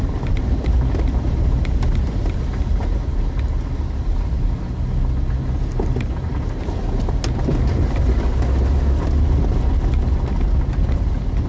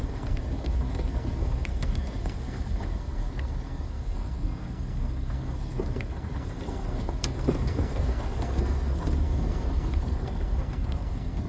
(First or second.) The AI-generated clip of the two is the second